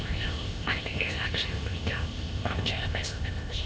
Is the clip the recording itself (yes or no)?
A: no